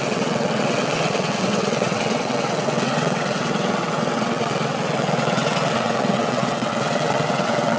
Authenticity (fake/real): fake